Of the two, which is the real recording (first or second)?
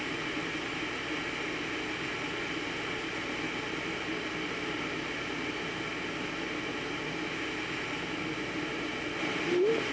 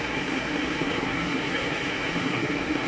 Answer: first